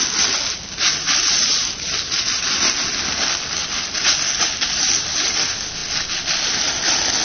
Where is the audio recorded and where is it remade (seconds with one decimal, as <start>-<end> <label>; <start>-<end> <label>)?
0.0-7.2 recorded